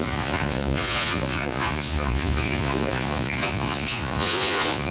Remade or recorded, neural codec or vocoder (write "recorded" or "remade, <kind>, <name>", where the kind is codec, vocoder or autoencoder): remade, vocoder, Vocos